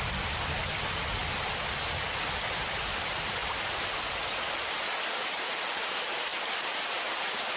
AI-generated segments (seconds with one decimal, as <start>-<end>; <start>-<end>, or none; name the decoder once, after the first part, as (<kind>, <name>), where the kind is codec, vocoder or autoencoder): 0.0-1.2 (vocoder, BigVGAN v2); 2.1-7.6